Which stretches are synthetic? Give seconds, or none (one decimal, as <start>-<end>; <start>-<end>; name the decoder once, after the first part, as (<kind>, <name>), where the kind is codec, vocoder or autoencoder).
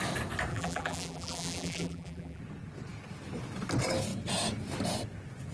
0.5-2.4 (vocoder, BigVGAN v2)